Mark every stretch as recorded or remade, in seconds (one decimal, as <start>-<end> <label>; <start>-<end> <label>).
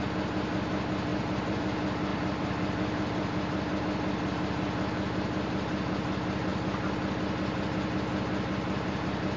0.0-1.1 recorded; 1.1-1.6 remade; 1.6-2.1 recorded; 2.1-3.8 remade; 3.8-9.4 recorded